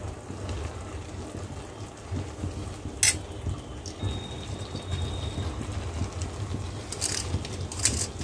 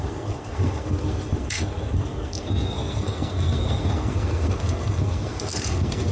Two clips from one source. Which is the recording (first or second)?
first